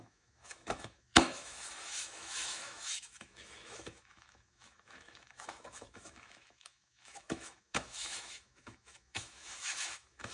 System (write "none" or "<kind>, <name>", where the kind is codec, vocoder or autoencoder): autoencoder, DAC-VAE